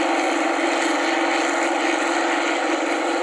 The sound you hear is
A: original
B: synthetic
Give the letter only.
A